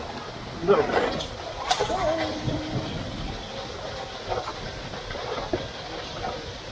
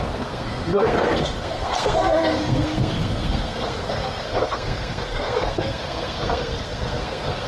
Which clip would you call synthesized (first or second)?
second